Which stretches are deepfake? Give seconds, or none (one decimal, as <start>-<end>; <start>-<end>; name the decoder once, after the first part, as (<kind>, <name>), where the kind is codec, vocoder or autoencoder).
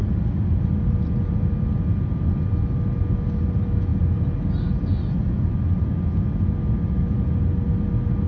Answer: none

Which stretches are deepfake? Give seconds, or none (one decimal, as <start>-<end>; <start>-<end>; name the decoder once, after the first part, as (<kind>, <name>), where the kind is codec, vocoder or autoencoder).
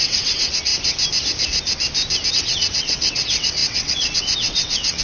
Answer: 0.0-0.7 (vocoder, WaveNeXt); 2.3-5.0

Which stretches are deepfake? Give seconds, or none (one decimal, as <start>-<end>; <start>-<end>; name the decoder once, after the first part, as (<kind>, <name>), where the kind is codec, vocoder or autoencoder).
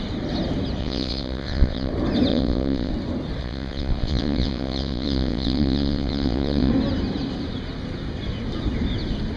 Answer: 0.8-1.9 (vocoder, WaveNeXt); 2.3-2.9; 3.4-6.7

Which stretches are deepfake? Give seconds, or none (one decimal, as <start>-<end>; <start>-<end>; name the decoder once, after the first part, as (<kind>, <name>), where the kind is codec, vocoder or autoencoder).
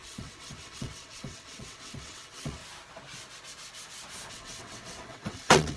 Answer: 0.0-2.6 (vocoder, WaveNeXt); 4.3-5.8